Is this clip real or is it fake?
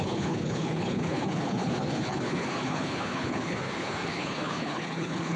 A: fake